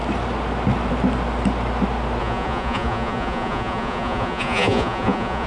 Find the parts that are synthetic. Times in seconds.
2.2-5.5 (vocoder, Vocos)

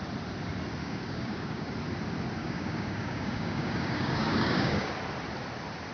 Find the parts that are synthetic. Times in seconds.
0.8-1.7 (codec, DAC); 2.4-4.9

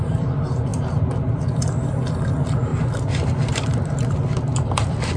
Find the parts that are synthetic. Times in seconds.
0.0-0.7 (vocoder, BigVGAN v2); 2.3-2.7; 4.6-5.2

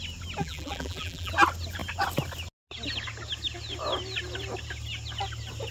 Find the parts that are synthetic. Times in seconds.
0.4-1.3 (vocoder, BigVGAN v2)

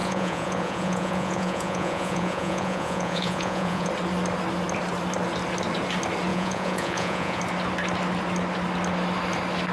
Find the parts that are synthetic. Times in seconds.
0.0-3.9 (vocoder, Vocos); 6.3-7.4

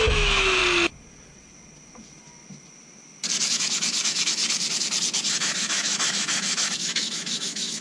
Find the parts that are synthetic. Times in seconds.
0.0-0.6 (autoencoder, DAC-VAE); 3.5-4.4; 5.3-7.8

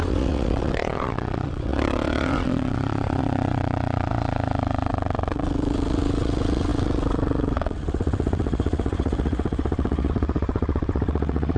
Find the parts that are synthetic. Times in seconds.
0.0-11.6 (vocoder, WaveNeXt)